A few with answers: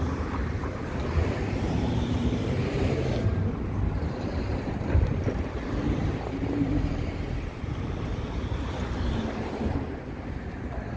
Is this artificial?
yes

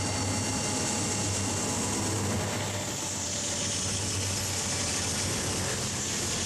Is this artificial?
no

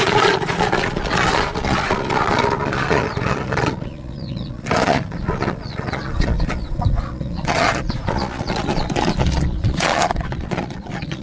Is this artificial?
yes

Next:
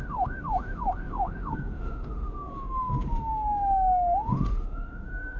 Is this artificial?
yes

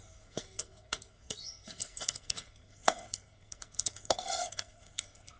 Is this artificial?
yes